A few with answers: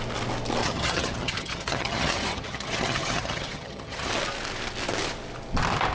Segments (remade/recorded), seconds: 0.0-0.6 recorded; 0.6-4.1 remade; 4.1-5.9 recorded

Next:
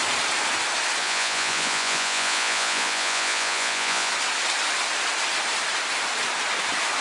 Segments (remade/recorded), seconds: 0.0-1.0 recorded; 1.0-4.1 remade; 4.1-7.0 recorded

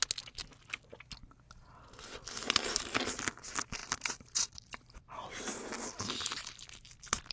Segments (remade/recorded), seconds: 0.0-3.8 recorded; 3.8-5.5 remade; 5.5-6.4 recorded; 6.4-7.3 remade

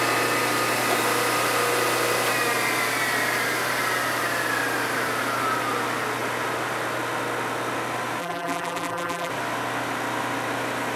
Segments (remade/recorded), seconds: 0.0-8.2 recorded; 8.2-9.3 remade; 9.3-11.0 recorded

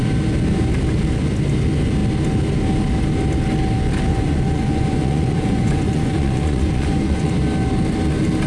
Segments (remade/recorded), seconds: 0.0-4.1 recorded; 4.1-7.3 remade; 7.3-8.5 recorded